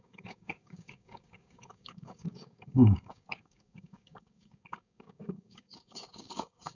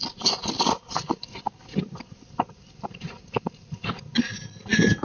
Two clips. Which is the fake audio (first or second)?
first